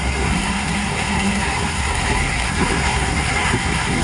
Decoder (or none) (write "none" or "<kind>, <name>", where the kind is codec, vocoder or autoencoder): codec, SNAC